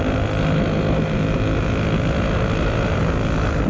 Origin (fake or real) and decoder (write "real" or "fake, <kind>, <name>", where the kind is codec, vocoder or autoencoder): real